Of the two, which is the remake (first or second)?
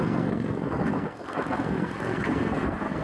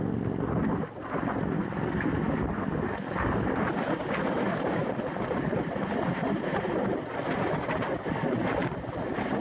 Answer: first